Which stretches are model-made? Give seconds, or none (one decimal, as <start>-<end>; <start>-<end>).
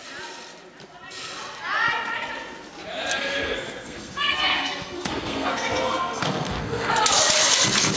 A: 3.1-6.9